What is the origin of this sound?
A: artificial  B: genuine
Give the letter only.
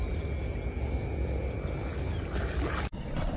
B